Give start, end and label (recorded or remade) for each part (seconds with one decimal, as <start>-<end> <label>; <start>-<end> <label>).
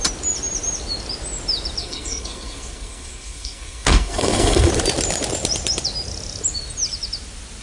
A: 0.0-1.8 recorded; 1.8-4.7 remade; 4.7-7.6 recorded